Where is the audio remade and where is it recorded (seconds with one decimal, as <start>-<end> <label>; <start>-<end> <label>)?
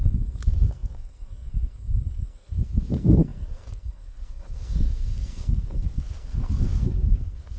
0.0-7.6 remade